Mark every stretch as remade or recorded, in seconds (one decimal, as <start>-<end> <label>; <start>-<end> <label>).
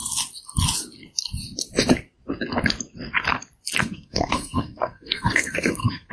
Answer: 0.0-3.8 recorded; 3.8-6.1 remade